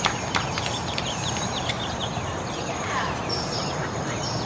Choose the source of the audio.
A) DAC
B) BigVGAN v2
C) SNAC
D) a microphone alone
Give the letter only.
B